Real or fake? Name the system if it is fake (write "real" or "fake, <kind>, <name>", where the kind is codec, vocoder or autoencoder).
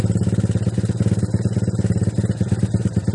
real